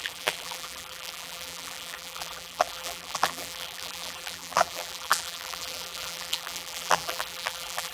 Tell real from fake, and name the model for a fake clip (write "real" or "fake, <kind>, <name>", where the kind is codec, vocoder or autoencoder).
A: fake, vocoder, BigVGAN v2